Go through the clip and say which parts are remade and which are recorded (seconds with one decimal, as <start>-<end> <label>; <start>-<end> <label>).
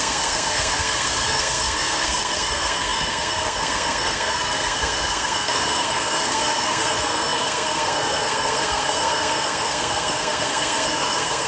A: 0.0-11.5 remade